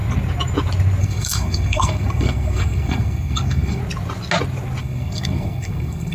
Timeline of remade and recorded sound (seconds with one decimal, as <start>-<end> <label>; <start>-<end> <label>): 0.0-1.0 recorded; 1.0-3.8 remade; 3.8-4.8 recorded; 4.8-6.1 remade